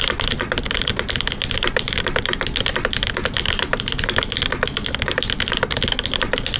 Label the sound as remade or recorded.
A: recorded